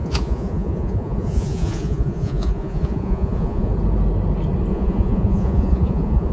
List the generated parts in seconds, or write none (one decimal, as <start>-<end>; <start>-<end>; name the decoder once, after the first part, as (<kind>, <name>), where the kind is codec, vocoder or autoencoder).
0.0-3.7 (vocoder, Vocos); 4.7-6.3